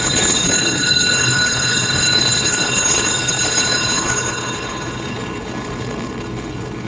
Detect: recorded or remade remade